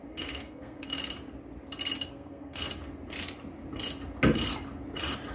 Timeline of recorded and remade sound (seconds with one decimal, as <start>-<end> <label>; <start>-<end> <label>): 0.0-1.0 remade; 1.0-2.1 recorded; 2.1-2.6 remade; 2.6-5.3 recorded

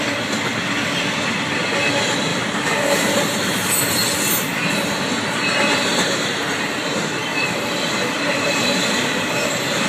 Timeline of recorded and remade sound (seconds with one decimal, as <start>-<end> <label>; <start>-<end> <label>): 0.0-2.3 recorded; 2.3-3.7 remade; 3.7-5.9 recorded; 5.9-6.8 remade; 6.8-7.3 recorded; 7.3-9.9 remade

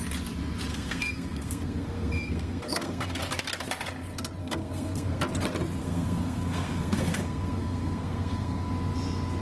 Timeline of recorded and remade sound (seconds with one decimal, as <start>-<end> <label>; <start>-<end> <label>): 0.0-0.7 recorded; 0.7-3.2 remade; 3.2-4.4 recorded; 4.4-5.2 remade; 5.2-5.8 recorded; 5.8-8.7 remade; 8.7-9.4 recorded